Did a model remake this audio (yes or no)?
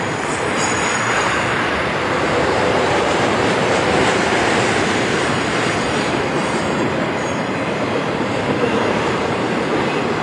yes